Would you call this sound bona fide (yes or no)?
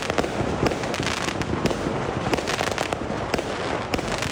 yes